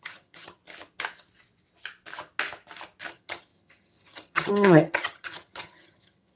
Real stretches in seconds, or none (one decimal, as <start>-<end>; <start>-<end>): 0.6-3.1